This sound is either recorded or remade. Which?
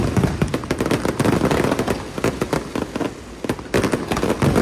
recorded